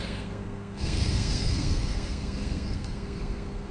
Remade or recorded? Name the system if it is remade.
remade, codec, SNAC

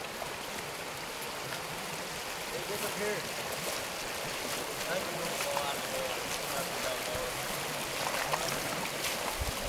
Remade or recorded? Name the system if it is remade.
recorded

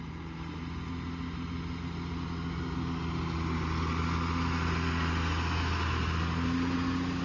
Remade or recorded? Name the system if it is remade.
recorded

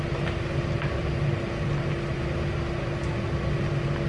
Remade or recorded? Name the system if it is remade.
recorded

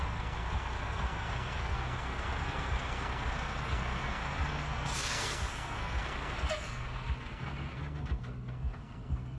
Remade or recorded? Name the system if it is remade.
remade, codec, SNAC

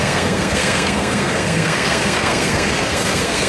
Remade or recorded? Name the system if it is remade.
remade, codec, SNAC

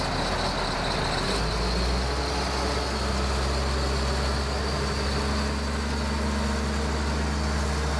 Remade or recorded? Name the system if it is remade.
recorded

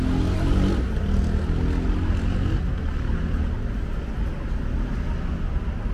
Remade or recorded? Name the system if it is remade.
recorded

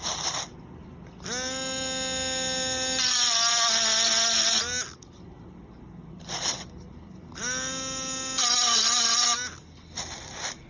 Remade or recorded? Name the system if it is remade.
recorded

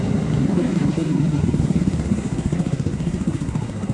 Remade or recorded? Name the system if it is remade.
remade, codec, SNAC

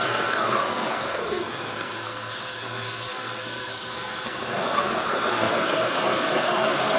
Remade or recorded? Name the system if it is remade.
remade, codec, SNAC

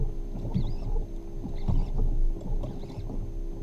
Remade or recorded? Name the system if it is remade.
recorded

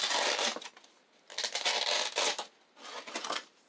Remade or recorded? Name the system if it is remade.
recorded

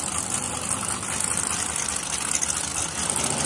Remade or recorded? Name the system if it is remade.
recorded